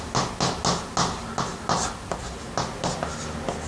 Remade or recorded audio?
recorded